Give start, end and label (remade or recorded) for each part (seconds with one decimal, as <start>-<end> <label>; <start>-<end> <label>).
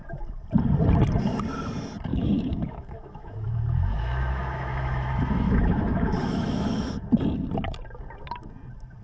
0.0-2.1 recorded; 2.1-6.9 remade; 6.9-9.0 recorded